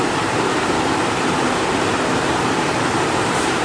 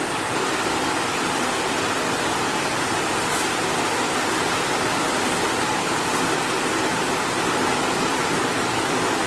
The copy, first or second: first